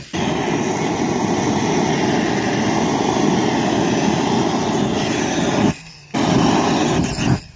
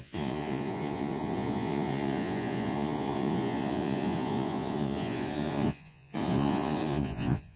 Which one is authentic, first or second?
first